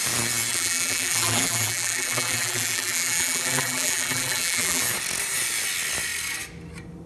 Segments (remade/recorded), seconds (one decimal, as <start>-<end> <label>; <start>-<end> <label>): 0.0-0.5 recorded; 0.5-4.8 remade; 4.8-7.1 recorded